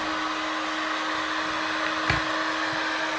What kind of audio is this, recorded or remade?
recorded